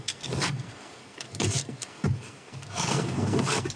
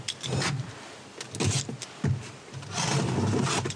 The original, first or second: second